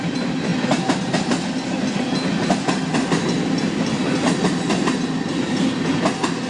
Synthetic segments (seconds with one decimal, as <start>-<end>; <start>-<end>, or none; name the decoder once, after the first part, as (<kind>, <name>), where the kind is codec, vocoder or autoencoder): none

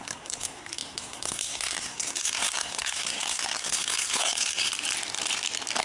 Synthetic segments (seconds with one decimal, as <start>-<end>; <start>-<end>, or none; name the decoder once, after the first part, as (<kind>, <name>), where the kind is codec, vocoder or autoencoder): 0.0-4.7 (codec, SNAC)

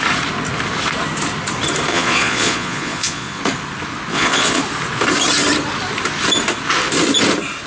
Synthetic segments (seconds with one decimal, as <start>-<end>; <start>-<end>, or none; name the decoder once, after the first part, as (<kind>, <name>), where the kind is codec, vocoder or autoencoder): 1.9-3.4 (vocoder, Vocos); 4.1-4.6